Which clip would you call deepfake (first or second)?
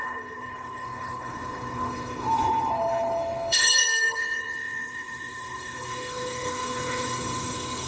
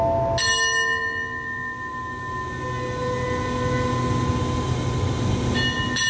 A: first